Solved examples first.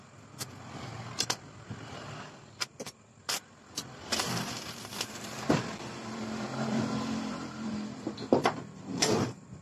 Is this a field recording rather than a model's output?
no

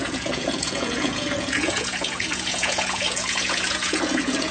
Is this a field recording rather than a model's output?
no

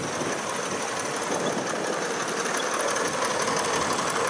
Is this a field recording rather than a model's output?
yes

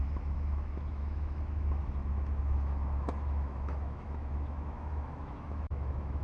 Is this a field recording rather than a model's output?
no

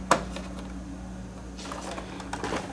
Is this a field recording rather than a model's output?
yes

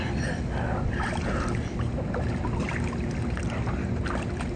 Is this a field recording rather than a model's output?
yes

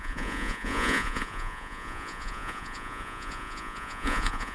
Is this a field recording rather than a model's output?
no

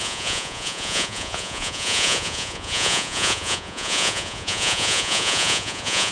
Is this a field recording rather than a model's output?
no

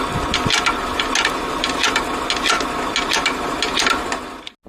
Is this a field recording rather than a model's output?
yes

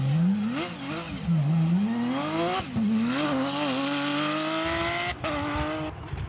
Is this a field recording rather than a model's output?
yes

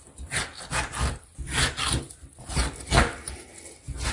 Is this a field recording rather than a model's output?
yes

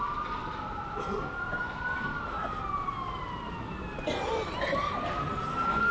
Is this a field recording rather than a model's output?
yes